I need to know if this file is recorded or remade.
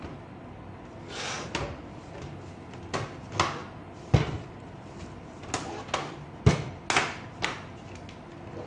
recorded